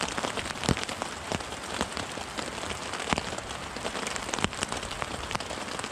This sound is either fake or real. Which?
real